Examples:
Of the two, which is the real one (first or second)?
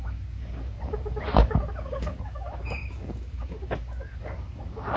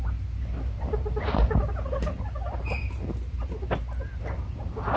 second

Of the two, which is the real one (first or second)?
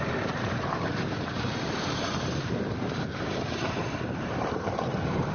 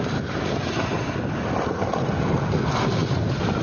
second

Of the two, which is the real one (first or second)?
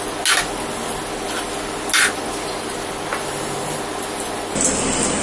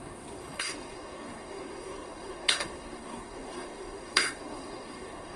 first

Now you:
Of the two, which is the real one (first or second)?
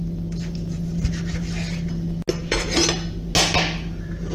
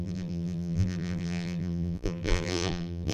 first